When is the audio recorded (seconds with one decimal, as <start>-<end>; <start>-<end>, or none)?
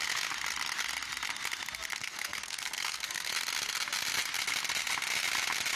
0.0-2.0; 3.3-5.8